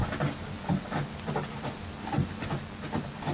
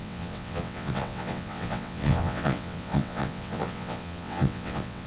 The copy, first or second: second